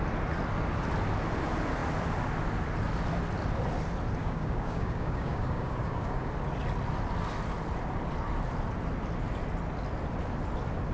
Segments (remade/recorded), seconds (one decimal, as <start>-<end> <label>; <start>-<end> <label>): 0.0-4.2 recorded; 4.2-6.3 remade; 6.3-10.9 recorded